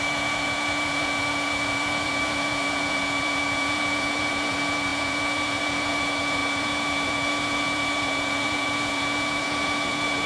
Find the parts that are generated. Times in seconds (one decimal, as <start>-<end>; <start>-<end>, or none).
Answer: 0.0-10.3